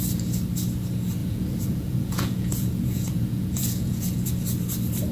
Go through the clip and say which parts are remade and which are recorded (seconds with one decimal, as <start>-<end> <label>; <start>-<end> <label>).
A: 0.0-1.2 recorded; 1.2-4.3 remade; 4.3-5.1 recorded